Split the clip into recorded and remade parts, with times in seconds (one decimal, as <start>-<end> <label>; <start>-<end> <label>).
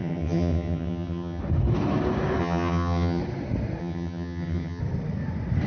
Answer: 0.0-1.4 remade; 1.4-2.4 recorded; 2.4-3.2 remade; 3.2-3.8 recorded; 3.8-4.8 remade; 4.8-5.7 recorded